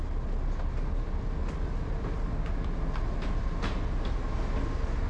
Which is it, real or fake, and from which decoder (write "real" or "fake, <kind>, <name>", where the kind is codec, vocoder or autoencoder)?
real